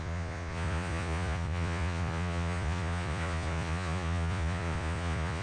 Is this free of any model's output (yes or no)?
no